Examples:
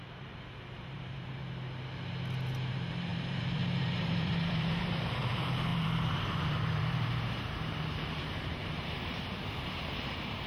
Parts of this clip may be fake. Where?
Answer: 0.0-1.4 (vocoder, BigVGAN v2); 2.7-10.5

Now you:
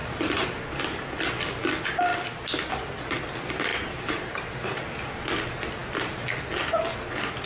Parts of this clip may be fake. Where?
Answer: 0.0-0.8 (vocoder, BigVGAN v2); 3.7-5.0

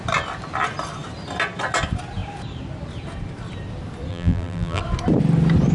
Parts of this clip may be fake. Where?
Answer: 4.1-4.8 (vocoder, BigVGAN v2)